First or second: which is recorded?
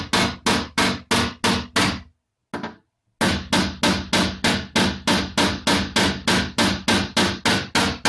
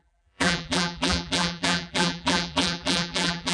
first